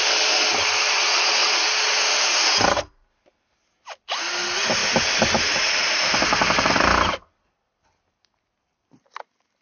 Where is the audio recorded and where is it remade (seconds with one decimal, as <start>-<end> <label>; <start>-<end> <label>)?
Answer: 0.0-4.8 recorded; 4.8-6.7 remade; 6.7-9.6 recorded